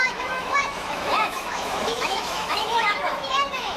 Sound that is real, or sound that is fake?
fake